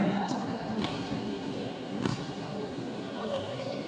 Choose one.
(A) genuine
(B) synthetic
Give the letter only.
B